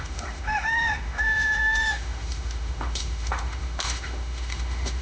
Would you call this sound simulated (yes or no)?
yes